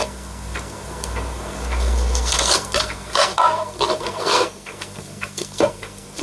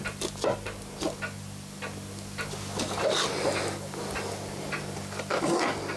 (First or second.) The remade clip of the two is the first